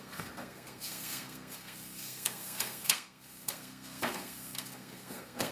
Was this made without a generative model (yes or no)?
no